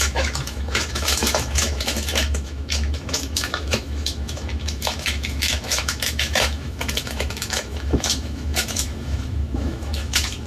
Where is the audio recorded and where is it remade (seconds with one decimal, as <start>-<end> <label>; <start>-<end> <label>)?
0.0-10.5 remade